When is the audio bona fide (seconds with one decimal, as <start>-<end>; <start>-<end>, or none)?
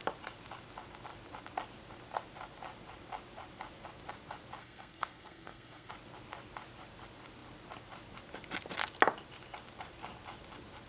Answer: 0.0-4.6; 5.9-10.9